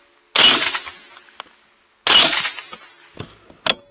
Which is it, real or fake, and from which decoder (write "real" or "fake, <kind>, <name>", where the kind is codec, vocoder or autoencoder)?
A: real